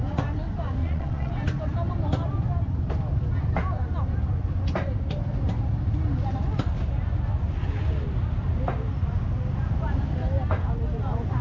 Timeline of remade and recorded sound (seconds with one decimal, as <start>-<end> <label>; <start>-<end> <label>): 0.0-0.8 recorded; 0.8-1.3 remade; 1.3-11.4 recorded